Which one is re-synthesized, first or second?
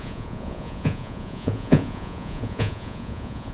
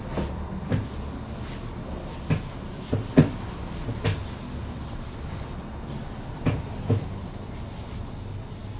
first